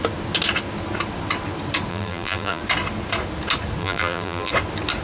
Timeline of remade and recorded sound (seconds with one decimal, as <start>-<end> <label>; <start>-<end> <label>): 0.0-1.9 recorded; 1.9-2.6 remade; 2.6-3.8 recorded; 3.8-4.5 remade; 4.5-5.0 recorded